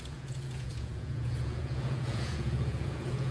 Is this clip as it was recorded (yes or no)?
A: no